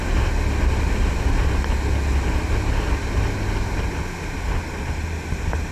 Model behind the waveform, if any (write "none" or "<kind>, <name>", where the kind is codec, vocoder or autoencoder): none